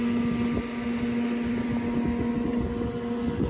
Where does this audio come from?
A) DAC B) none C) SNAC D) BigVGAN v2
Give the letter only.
B